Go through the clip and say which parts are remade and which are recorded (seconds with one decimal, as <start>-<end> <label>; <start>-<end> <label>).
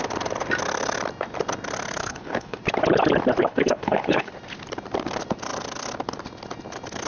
0.0-2.0 recorded; 2.0-2.6 remade; 2.6-3.4 recorded; 3.4-4.3 remade; 4.3-7.1 recorded